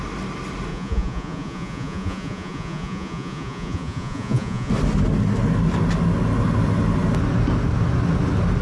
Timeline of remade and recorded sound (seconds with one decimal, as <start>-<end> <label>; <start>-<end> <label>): 0.0-0.7 recorded; 0.7-4.7 remade; 4.7-8.6 recorded